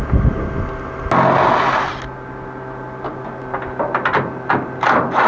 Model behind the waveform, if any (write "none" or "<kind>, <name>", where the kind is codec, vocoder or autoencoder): none